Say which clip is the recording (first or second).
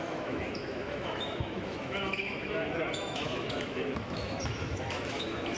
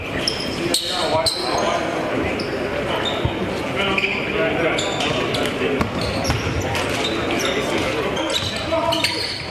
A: second